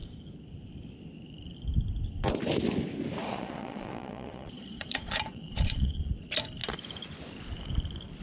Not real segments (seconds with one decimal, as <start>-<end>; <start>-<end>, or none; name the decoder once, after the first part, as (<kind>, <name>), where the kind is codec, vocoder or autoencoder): 3.2-6.1 (vocoder, Vocos)